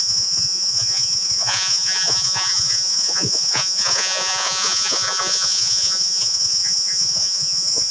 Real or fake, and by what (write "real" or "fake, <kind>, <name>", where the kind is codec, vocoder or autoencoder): fake, vocoder, Vocos